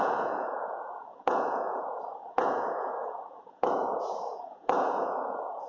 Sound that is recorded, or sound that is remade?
remade